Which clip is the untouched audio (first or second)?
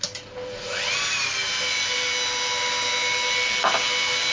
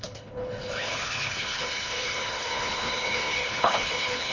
first